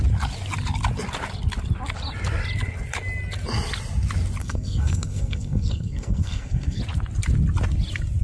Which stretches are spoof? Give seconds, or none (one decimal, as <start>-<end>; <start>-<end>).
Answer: 4.4-6.8